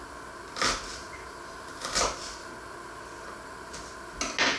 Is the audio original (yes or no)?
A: yes